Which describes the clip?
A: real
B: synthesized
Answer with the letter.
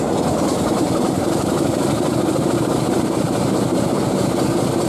B